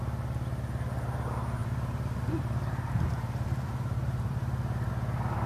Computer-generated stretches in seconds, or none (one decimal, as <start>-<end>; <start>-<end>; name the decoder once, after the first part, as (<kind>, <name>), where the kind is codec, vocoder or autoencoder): 1.6-4.9 (vocoder, BigVGAN v2)